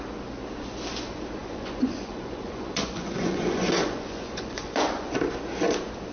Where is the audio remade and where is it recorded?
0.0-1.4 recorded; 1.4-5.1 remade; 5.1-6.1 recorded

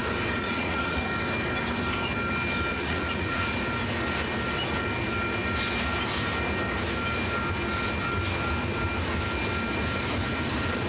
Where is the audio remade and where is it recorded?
0.0-0.4 recorded; 0.4-1.0 remade; 1.0-2.7 recorded; 2.7-3.5 remade; 3.5-10.9 recorded

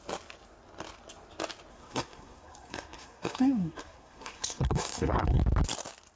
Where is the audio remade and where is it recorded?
0.0-1.7 recorded; 1.7-5.4 remade; 5.4-6.2 recorded

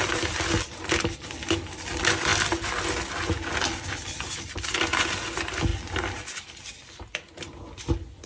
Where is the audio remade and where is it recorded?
0.0-8.3 recorded

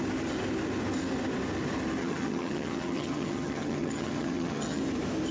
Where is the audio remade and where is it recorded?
0.0-2.0 recorded; 2.0-4.8 remade; 4.8-5.3 recorded

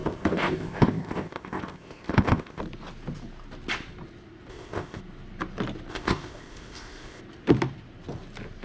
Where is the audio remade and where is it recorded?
0.0-2.6 remade; 2.6-4.5 recorded; 4.5-5.0 remade; 5.0-5.9 recorded; 5.9-7.2 remade; 7.2-8.6 recorded